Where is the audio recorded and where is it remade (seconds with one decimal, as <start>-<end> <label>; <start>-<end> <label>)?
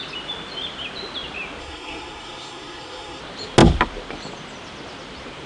0.0-1.6 recorded; 1.6-3.2 remade; 3.2-5.5 recorded